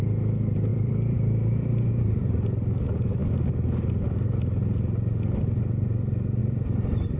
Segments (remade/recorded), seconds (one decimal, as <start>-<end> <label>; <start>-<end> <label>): 0.0-0.7 recorded; 0.7-1.9 remade; 1.9-6.4 recorded; 6.4-7.2 remade